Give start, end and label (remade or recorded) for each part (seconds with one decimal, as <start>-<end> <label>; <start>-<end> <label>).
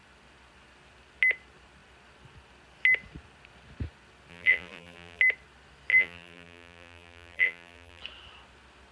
0.0-4.3 recorded; 4.3-5.2 remade; 5.2-5.9 recorded; 5.9-8.0 remade; 8.0-8.9 recorded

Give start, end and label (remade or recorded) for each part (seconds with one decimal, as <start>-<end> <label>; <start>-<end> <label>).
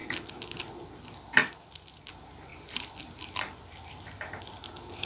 0.0-1.4 recorded; 1.4-2.1 remade; 2.1-2.5 recorded; 2.5-3.2 remade; 3.2-5.1 recorded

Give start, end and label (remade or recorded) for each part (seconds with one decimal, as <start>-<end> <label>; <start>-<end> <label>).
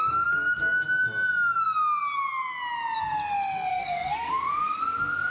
0.0-3.7 recorded; 3.7-4.8 remade; 4.8-5.3 recorded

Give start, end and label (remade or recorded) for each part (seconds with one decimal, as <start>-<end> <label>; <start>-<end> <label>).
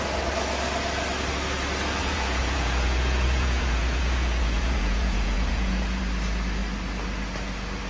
0.0-2.0 recorded; 2.0-6.0 remade; 6.0-7.9 recorded